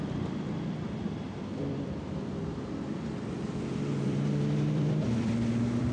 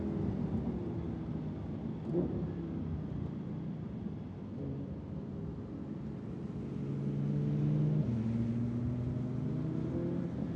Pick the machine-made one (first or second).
first